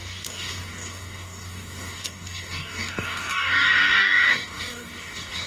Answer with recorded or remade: remade